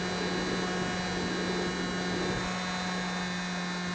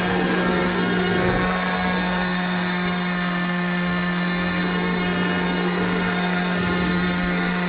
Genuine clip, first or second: first